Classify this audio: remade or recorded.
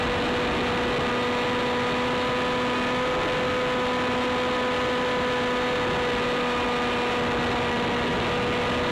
recorded